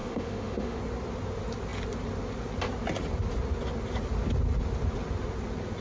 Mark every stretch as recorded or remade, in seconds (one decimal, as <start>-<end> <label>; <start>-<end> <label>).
0.0-0.8 remade; 0.8-5.8 recorded